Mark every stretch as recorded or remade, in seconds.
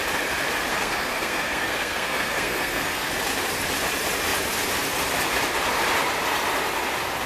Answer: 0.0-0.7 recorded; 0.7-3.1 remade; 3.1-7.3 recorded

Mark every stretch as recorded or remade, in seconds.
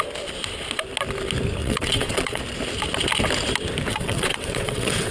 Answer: 0.0-1.6 recorded; 1.6-2.4 remade; 2.4-3.9 recorded; 3.9-5.1 remade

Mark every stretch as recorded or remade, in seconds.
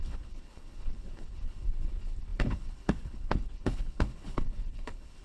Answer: 0.0-5.2 remade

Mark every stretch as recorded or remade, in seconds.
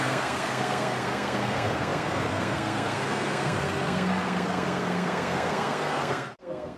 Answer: 0.0-6.8 remade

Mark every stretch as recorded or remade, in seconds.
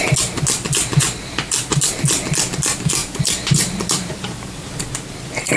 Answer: 0.0-3.0 recorded; 3.0-4.7 remade; 4.7-5.6 recorded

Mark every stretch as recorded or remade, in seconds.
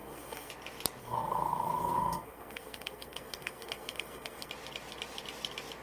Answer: 0.0-0.5 remade; 0.5-1.0 recorded; 1.0-4.5 remade; 4.5-5.8 recorded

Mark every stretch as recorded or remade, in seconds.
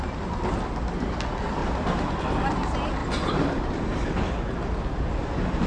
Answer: 0.0-1.6 recorded; 1.6-2.2 remade; 2.2-3.0 recorded; 3.0-3.6 remade; 3.6-5.7 recorded